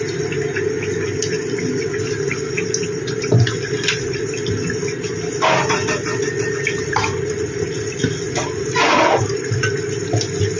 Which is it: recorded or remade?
recorded